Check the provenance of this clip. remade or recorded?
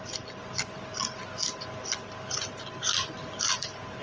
recorded